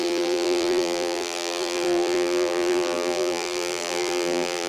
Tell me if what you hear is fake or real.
fake